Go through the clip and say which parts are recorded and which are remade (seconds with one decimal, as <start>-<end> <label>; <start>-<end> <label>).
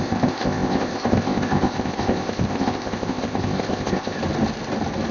0.0-4.2 remade; 4.2-5.1 recorded